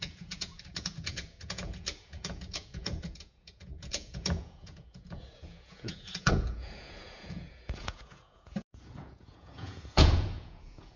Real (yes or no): no